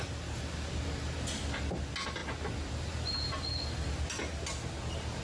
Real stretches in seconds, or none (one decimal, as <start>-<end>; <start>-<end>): 0.0-5.2